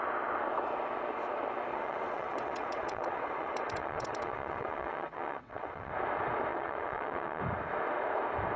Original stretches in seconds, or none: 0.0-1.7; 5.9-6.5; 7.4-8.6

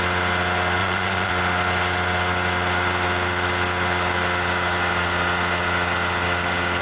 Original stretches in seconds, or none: 0.0-0.8; 1.3-6.8